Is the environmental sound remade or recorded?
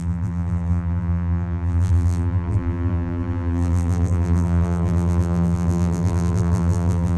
remade